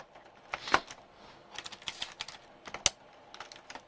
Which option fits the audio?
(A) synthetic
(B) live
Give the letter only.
B